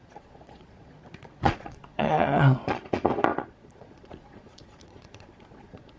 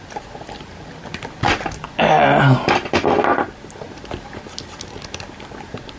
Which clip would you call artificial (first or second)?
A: first